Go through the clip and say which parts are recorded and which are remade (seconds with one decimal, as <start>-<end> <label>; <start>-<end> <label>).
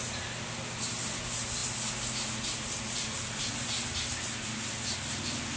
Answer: 0.0-1.6 recorded; 1.6-3.4 remade; 3.4-5.6 recorded